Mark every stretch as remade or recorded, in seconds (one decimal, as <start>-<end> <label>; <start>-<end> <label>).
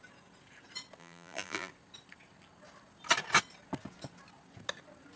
0.0-1.0 recorded; 1.0-1.7 remade; 1.7-5.2 recorded